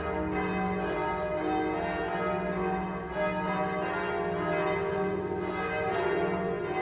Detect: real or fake real